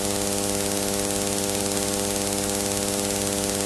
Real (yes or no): yes